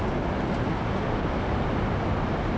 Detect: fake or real real